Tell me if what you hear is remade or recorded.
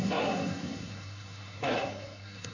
remade